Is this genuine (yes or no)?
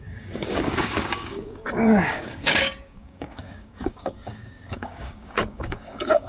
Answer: no